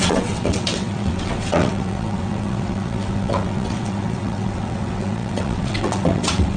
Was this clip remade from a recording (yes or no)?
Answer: yes